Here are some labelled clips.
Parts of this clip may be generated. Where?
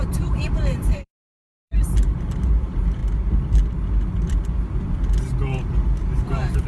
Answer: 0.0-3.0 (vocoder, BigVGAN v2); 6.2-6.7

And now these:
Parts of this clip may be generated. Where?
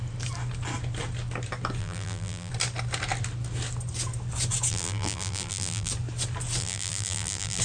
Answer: 1.8-2.5 (vocoder, BigVGAN v2); 4.7-5.9; 6.6-7.6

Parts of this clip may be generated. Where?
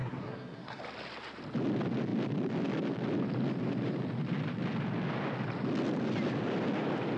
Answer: 0.0-0.8 (codec, SNAC)